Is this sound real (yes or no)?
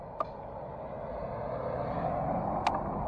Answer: yes